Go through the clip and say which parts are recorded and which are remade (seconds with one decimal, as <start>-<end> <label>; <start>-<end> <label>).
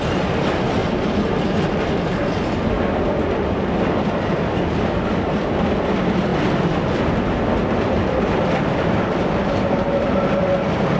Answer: 0.0-11.0 recorded